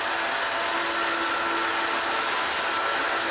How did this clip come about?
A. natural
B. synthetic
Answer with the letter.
A